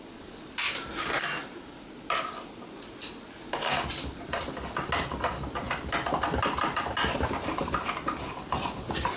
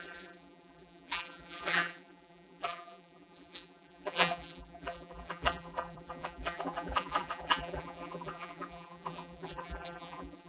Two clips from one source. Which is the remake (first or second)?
second